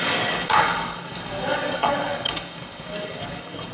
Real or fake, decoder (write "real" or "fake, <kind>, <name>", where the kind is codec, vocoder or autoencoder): fake, codec, DAC